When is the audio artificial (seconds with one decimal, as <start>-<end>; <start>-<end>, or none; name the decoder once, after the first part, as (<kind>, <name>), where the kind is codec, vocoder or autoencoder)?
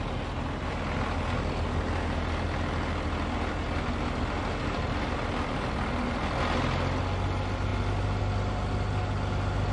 none